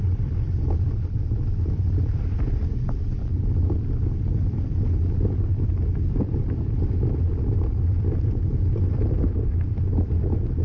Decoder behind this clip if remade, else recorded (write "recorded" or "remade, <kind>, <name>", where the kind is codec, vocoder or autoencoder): remade, vocoder, BigVGAN v2